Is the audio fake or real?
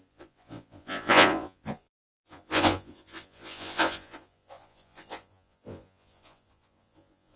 fake